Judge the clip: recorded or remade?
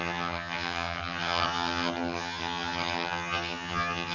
remade